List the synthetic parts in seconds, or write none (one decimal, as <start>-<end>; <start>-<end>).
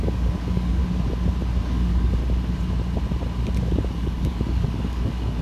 0.0-0.8; 1.6-2.2; 3.6-5.4